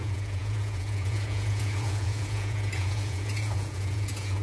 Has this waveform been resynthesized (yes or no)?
yes